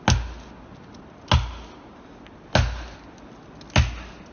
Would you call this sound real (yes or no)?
yes